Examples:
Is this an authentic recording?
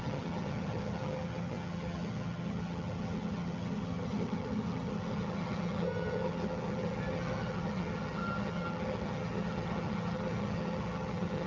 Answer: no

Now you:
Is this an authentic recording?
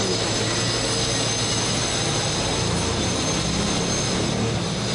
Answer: yes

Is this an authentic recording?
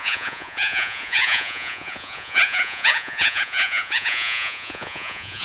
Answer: no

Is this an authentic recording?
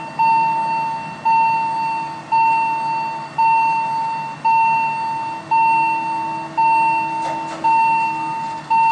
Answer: yes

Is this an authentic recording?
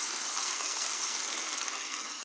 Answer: no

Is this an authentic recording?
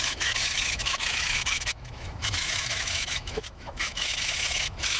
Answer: no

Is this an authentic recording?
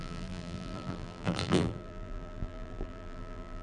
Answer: no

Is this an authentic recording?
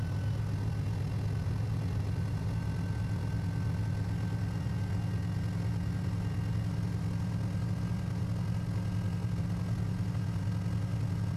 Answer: yes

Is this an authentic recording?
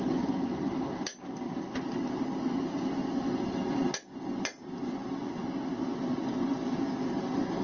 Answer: yes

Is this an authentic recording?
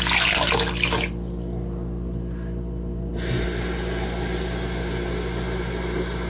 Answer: yes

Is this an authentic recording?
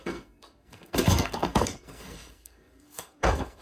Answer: no